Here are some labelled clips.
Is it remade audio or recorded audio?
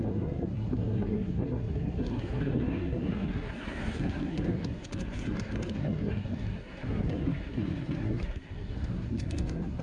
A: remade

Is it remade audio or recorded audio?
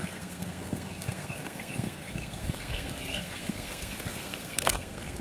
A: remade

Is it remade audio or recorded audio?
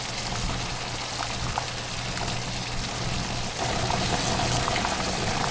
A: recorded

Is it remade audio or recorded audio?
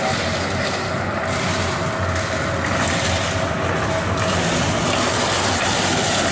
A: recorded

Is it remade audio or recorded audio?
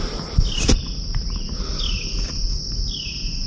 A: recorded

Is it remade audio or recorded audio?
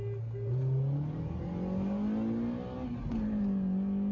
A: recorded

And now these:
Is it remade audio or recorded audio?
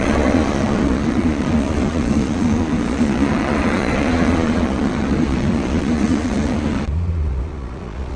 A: remade